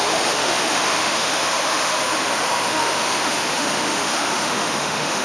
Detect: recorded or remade remade